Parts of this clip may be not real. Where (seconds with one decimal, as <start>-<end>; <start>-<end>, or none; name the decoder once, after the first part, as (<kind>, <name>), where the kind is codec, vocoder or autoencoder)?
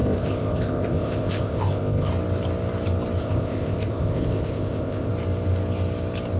0.0-2.1 (codec, ZipCodec); 3.2-5.1